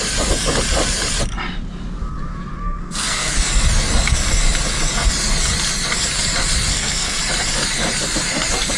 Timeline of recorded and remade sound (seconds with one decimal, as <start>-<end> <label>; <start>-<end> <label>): 0.0-2.6 recorded; 2.6-3.5 remade; 3.5-6.7 recorded; 6.7-7.2 remade; 7.2-8.8 recorded